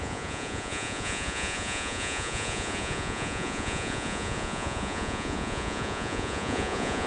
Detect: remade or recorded remade